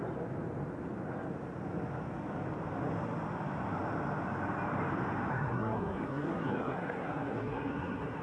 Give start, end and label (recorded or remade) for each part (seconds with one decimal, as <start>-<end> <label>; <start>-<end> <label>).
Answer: 0.0-5.3 recorded; 5.3-8.2 remade